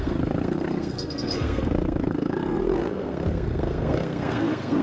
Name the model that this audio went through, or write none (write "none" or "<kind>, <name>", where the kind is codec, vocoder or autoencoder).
codec, SNAC